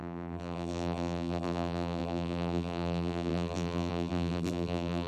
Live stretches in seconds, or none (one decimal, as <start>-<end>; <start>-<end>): none